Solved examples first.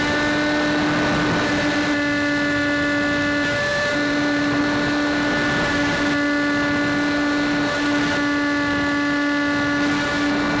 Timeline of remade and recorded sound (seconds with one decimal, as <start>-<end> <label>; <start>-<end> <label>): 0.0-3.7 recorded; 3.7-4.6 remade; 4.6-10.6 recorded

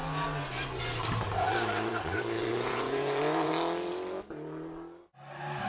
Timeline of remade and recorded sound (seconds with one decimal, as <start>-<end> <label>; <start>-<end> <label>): 0.0-2.4 recorded; 2.4-3.5 remade; 3.5-5.7 recorded

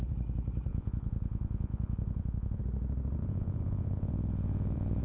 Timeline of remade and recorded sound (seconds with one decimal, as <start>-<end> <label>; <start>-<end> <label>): 0.0-0.7 recorded; 0.7-2.6 remade; 2.6-3.2 recorded; 3.2-5.0 remade

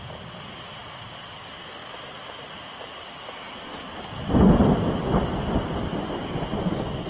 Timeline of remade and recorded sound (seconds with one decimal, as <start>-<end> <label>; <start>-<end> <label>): 0.0-1.8 recorded; 1.8-5.8 remade; 5.8-7.1 recorded

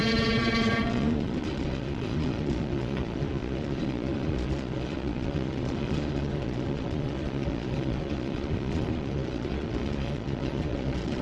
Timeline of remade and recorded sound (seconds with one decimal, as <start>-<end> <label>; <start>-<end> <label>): 0.0-11.2 remade

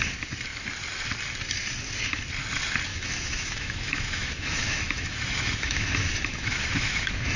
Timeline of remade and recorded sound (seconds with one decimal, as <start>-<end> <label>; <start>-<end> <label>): 0.0-2.9 recorded; 2.9-7.4 remade